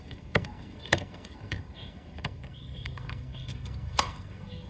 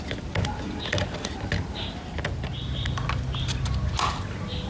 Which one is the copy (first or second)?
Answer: first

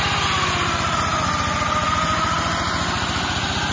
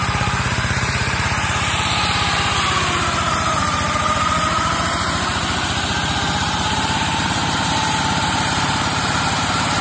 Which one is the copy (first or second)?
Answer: second